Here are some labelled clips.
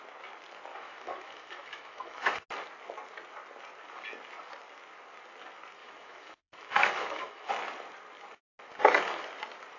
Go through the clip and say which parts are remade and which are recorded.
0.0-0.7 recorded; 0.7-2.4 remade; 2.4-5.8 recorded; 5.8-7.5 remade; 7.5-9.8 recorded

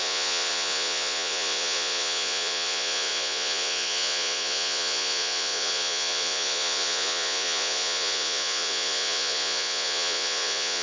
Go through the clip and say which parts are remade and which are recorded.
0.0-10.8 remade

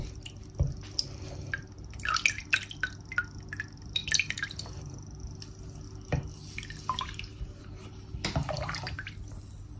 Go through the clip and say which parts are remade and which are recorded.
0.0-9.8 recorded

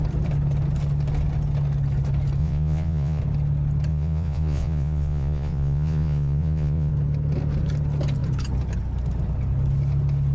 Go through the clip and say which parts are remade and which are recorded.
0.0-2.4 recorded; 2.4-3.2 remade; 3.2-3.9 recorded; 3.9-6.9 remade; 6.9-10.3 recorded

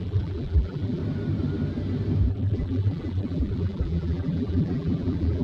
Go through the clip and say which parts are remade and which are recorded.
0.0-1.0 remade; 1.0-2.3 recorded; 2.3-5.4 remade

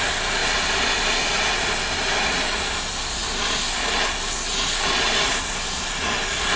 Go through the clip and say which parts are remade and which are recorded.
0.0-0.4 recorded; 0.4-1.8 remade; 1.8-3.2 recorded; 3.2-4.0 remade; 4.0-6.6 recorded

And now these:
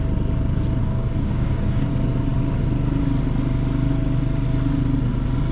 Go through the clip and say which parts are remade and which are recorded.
0.0-0.8 recorded; 0.8-1.9 remade; 1.9-5.5 recorded

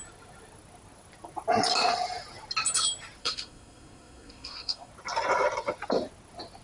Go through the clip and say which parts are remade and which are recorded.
0.0-3.2 recorded; 3.2-4.9 remade; 4.9-6.6 recorded